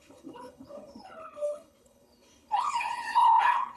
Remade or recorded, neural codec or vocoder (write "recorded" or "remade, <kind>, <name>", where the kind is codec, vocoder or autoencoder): remade, codec, HILCodec